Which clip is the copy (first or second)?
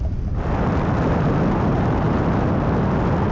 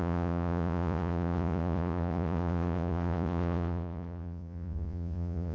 second